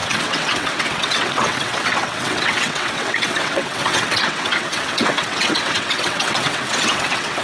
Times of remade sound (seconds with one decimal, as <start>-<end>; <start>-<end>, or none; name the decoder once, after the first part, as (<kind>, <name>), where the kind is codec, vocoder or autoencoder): 0.0-7.4 (vocoder, WaveNeXt)